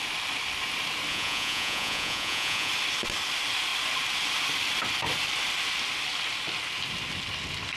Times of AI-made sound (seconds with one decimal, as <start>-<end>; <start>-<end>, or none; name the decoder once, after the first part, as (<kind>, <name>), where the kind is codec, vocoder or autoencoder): 1.1-2.7 (vocoder, Vocos)